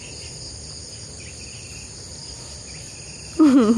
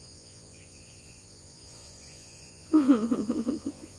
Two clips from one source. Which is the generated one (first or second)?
second